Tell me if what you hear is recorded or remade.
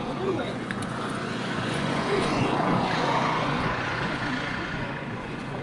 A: remade